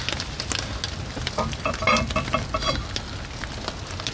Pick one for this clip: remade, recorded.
recorded